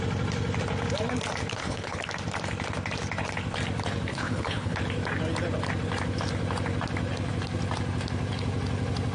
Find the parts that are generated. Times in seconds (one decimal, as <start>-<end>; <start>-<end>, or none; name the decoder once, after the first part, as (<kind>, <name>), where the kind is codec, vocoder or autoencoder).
1.5-2.0 (codec, HILCodec); 4.1-4.8